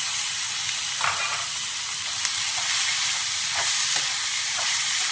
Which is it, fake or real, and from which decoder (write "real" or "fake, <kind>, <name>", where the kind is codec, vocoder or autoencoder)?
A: real